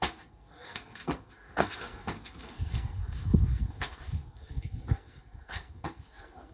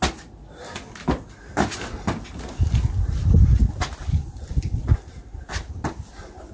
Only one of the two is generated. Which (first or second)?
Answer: first